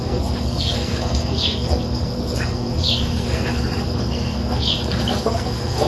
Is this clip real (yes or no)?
no